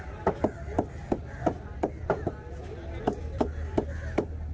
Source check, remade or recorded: recorded